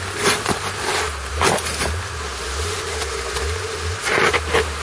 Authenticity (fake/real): real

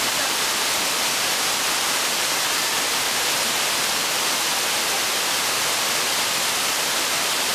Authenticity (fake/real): fake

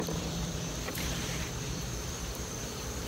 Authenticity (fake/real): fake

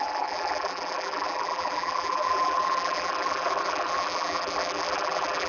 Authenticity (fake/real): fake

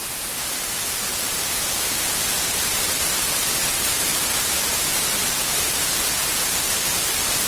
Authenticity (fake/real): fake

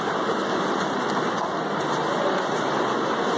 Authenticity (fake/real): real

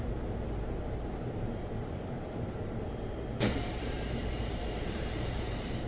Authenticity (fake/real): fake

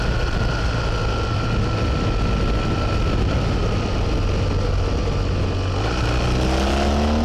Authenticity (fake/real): real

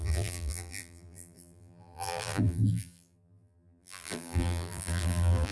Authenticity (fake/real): fake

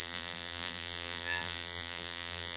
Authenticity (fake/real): fake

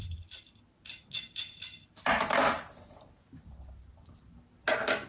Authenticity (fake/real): real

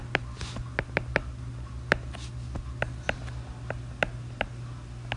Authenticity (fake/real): real